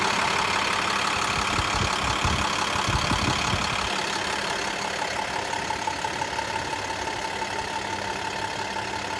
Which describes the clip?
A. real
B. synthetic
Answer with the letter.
A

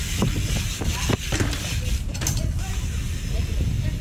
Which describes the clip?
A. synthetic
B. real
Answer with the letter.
B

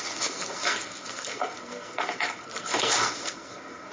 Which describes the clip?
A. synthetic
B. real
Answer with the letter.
A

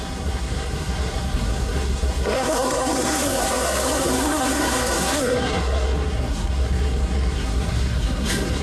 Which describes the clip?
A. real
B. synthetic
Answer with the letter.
B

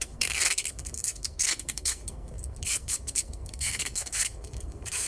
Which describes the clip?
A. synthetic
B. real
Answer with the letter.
A